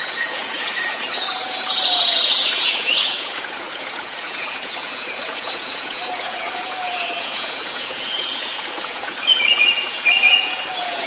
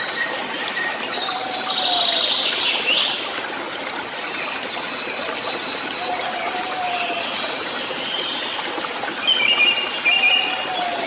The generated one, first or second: first